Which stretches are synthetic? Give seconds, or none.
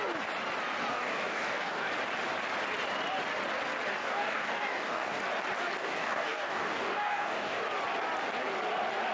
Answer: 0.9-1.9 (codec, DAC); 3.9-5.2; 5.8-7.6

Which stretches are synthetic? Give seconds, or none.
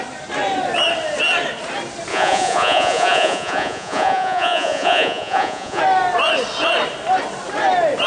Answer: 2.1-5.8 (vocoder, Vocos)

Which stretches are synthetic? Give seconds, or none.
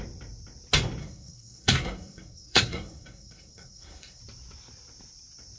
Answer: 1.0-4.2 (codec, SNAC)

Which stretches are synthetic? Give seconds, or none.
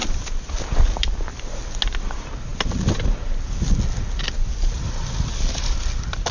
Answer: none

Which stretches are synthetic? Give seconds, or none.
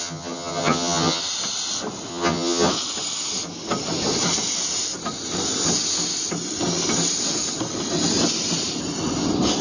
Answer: 0.0-1.2 (vocoder, HiFi-GAN); 2.1-2.7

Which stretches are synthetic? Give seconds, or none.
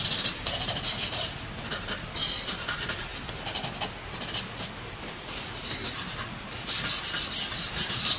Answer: 0.0-3.1 (vocoder, BigVGAN v2); 4.9-8.2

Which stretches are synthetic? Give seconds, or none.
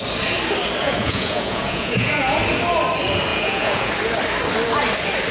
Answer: 0.8-2.4 (vocoder, Vocos); 3.3-3.9